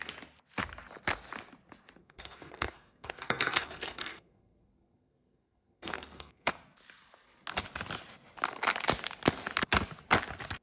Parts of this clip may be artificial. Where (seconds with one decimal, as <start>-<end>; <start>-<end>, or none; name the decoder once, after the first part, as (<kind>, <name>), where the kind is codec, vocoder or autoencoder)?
2.0-6.5 (codec, SNAC)